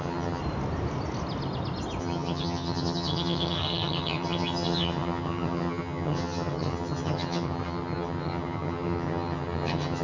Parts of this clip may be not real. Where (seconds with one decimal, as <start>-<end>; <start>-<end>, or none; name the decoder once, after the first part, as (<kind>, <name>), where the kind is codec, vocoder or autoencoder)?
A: 0.0-0.4 (vocoder, HiFi-GAN); 2.0-10.0